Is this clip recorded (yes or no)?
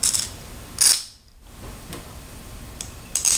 yes